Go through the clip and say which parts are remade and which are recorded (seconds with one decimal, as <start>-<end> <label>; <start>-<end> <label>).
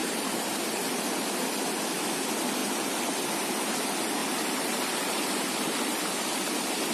0.0-1.4 remade; 1.4-4.2 recorded; 4.2-5.2 remade; 5.2-6.9 recorded